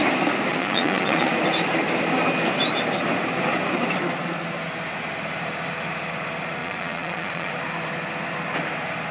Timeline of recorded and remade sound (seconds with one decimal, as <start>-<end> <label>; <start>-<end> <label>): 0.0-0.5 recorded; 0.5-1.3 remade; 1.3-6.6 recorded; 6.6-7.5 remade; 7.5-9.1 recorded